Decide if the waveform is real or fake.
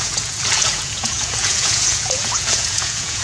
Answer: fake